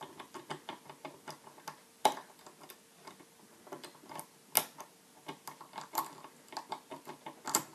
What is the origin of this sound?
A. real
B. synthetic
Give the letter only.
A